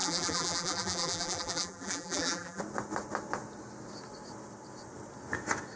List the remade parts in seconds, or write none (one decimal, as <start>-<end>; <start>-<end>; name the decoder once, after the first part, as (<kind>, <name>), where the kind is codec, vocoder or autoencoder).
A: 0.0-2.6 (vocoder, BigVGAN v2)